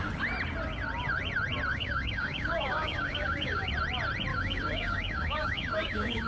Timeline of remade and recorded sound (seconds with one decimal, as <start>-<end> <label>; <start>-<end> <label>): 0.0-1.7 recorded; 1.7-3.7 remade; 3.7-4.3 recorded; 4.3-6.3 remade